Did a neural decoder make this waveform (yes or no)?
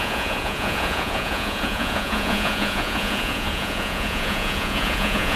yes